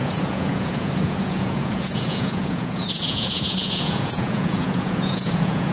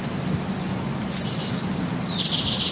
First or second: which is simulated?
first